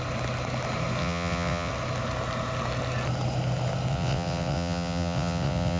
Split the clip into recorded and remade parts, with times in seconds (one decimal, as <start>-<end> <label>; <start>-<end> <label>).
0.0-1.0 recorded; 1.0-1.7 remade; 1.7-3.9 recorded; 3.9-5.8 remade